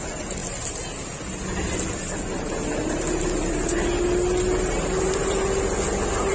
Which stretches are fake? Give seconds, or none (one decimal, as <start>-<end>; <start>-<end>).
2.7-3.2